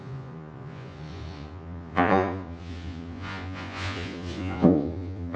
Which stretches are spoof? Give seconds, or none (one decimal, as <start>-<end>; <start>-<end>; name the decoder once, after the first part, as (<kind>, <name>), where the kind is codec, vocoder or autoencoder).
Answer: 0.0-5.4 (vocoder, Vocos)